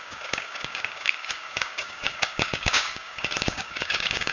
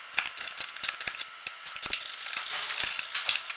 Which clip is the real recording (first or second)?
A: second